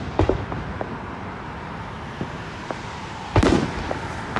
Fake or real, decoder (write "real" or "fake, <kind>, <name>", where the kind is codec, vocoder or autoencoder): fake, vocoder, BigVGAN v2